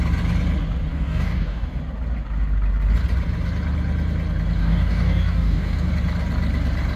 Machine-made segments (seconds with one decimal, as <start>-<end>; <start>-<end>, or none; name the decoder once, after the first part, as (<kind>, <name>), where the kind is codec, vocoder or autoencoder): 0.9-1.8 (codec, DAC); 4.6-5.9

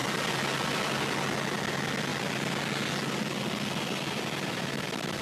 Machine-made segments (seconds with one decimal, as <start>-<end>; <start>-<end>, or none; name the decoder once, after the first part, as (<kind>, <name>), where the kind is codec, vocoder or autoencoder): none

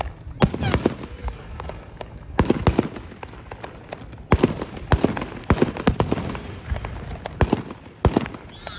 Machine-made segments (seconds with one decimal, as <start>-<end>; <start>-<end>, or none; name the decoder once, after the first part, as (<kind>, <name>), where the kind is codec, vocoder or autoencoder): 1.2-2.5 (codec, DAC)

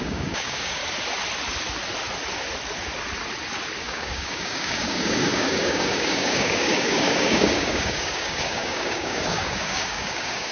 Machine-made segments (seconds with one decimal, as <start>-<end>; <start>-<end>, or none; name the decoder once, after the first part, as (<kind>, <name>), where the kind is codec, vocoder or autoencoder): 0.0-0.8 (codec, DAC); 3.8-10.5

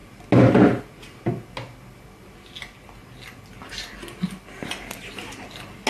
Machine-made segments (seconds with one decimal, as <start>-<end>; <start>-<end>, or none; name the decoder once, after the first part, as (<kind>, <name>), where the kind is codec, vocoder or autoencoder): none